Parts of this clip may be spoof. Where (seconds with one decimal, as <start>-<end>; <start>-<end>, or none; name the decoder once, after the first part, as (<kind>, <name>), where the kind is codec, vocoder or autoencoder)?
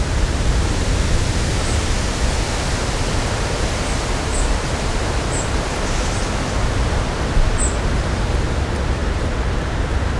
4.3-6.2 (vocoder, BigVGAN v2)